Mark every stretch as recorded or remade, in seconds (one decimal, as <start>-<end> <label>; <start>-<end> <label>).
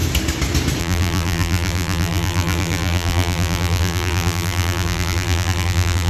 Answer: 0.0-0.8 recorded; 0.8-6.1 remade